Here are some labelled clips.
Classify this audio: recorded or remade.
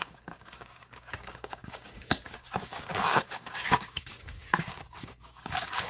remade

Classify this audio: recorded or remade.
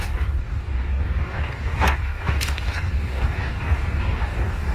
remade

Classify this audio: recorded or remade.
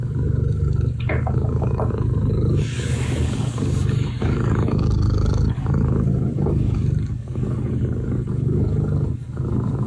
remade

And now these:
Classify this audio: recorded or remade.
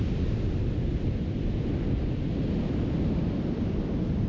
recorded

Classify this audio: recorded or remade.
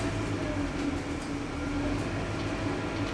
recorded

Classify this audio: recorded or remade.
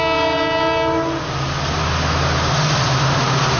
recorded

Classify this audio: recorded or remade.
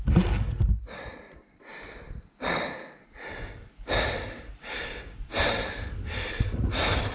recorded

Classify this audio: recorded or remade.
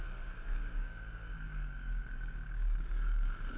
remade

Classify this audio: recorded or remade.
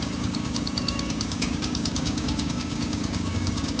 remade